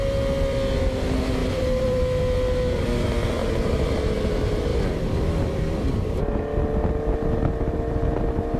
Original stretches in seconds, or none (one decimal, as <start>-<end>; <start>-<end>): 0.0-1.4; 2.0-3.4; 4.0-4.7; 6.2-8.6